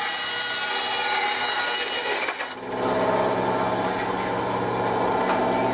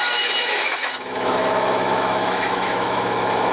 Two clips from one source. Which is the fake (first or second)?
second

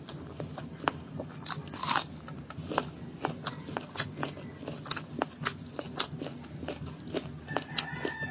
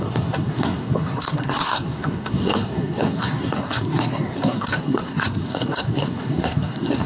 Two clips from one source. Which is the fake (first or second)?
second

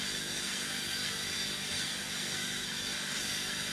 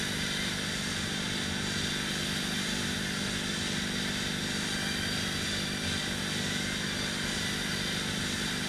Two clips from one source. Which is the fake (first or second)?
first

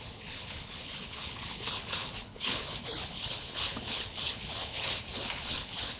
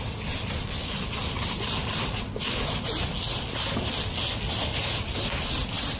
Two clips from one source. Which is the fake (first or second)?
first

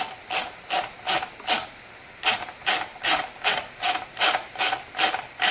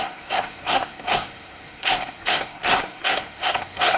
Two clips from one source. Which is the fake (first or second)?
second